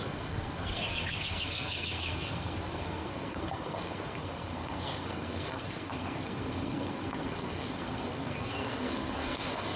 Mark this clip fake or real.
fake